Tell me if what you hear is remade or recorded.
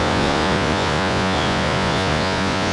remade